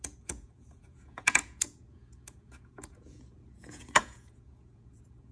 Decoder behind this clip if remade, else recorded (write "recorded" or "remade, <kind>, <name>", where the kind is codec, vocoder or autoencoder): remade, vocoder, Vocos